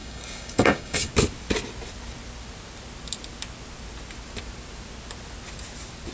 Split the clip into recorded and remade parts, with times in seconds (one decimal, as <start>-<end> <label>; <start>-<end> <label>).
0.0-1.1 remade; 1.1-6.1 recorded